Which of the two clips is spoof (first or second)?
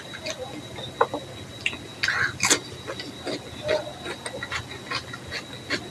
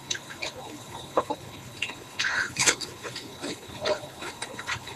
second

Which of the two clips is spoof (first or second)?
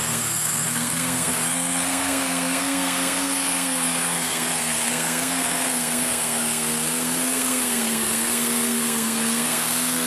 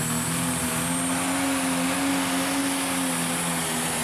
first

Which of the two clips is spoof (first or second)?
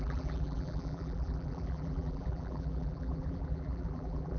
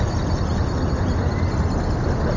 first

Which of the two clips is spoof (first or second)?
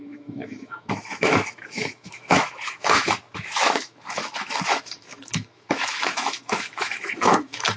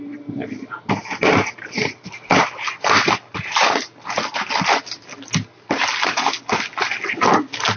first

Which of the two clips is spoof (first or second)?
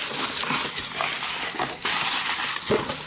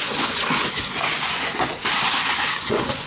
second